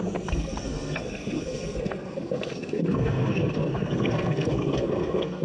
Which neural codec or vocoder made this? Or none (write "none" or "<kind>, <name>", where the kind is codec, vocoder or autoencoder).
codec, SNAC